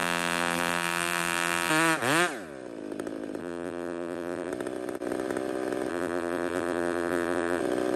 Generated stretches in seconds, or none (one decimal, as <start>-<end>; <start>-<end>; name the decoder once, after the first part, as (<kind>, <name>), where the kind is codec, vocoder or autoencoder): 0.0-1.7 (vocoder, BigVGAN v2); 3.4-4.5; 5.9-7.6

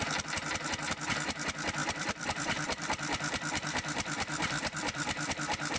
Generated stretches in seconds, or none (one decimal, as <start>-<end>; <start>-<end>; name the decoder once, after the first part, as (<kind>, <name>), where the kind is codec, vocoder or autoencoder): 1.8-5.3 (vocoder, BigVGAN v2)